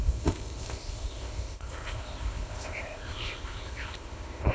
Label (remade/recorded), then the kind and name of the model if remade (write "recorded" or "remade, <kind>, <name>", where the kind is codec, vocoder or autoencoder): remade, codec, ZipCodec